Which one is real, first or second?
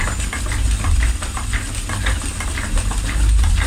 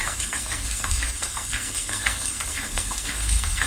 first